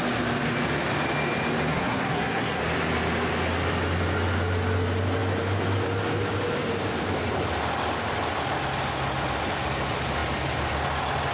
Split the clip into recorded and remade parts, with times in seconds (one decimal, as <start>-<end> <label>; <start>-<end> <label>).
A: 0.0-1.7 recorded; 1.7-2.6 remade; 2.6-11.3 recorded